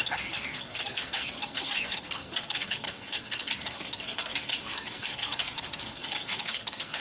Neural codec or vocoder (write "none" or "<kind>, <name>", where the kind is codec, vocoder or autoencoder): codec, SNAC